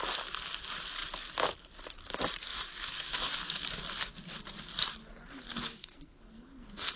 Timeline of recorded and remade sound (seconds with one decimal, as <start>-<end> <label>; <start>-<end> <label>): 0.0-5.8 recorded; 5.8-7.0 remade